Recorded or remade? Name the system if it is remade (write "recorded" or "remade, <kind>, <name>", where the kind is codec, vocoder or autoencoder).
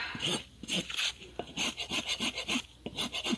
recorded